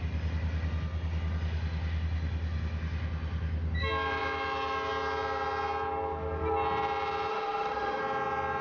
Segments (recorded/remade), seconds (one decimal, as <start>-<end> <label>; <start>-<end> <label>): 0.0-7.3 recorded; 7.3-8.0 remade; 8.0-8.6 recorded